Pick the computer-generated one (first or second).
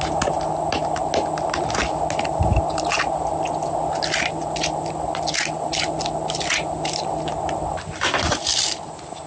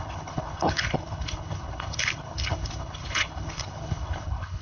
second